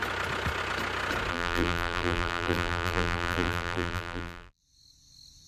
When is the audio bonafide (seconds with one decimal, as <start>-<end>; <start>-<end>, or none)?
0.0-1.3; 4.6-5.5